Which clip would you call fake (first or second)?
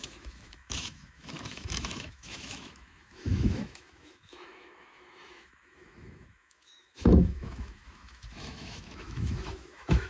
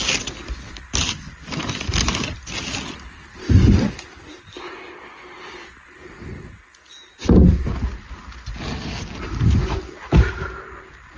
first